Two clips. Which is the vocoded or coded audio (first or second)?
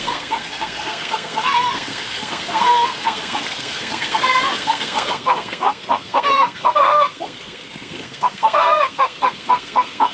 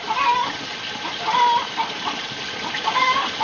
first